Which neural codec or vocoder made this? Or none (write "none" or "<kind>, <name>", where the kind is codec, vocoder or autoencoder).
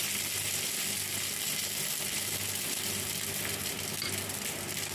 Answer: none